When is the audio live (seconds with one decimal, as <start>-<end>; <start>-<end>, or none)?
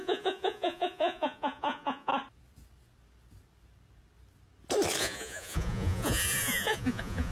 2.1-5.0